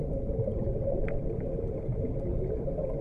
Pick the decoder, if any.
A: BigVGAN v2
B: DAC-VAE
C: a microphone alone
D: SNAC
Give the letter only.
C